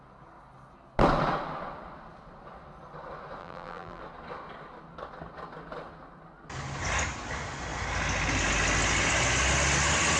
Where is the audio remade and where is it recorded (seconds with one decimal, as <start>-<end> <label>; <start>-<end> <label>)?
0.0-3.4 recorded; 3.4-4.0 remade; 4.0-10.2 recorded